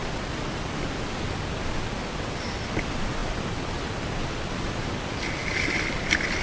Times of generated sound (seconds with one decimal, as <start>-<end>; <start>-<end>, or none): 0.0-1.0; 3.2-5.0